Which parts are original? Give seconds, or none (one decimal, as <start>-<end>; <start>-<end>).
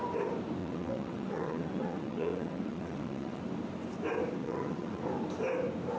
0.0-0.6; 3.4-4.4; 5.0-6.0